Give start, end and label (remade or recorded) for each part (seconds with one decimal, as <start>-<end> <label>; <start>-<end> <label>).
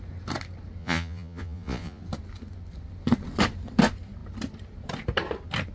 0.0-0.8 recorded; 0.8-2.0 remade; 2.0-5.7 recorded